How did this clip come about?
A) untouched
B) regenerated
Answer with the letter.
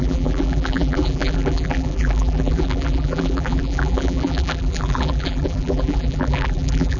B